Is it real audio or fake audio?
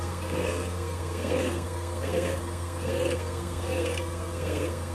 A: fake